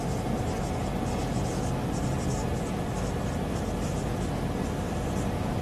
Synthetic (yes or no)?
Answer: no